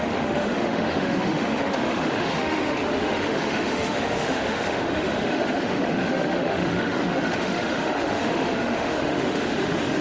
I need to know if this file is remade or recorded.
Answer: remade